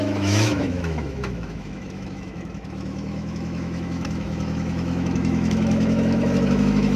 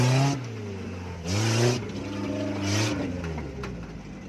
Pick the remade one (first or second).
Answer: first